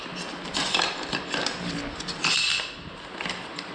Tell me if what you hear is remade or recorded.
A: recorded